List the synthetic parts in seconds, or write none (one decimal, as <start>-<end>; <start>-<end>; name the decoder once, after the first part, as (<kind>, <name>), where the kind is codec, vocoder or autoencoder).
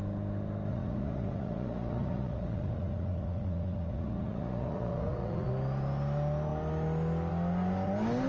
0.7-5.5 (vocoder, Vocos)